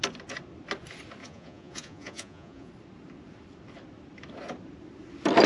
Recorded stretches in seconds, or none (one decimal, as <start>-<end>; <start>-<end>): 0.0-1.2; 2.7-5.5